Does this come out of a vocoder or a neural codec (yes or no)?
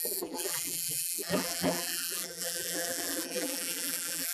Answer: yes